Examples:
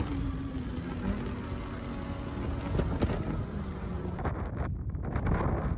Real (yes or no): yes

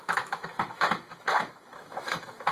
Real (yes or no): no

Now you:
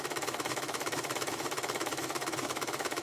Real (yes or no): no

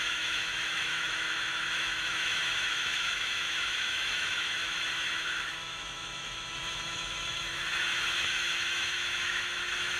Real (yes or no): no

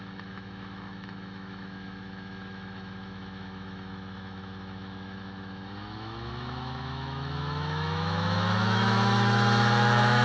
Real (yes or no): no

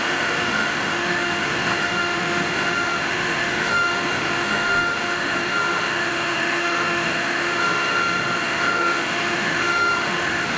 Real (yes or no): no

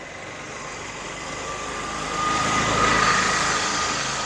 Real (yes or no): yes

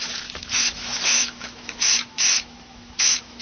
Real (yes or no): no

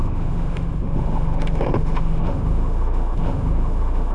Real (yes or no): no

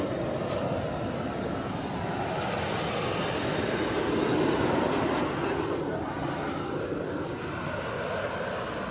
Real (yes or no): yes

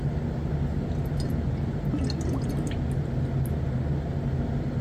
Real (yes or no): yes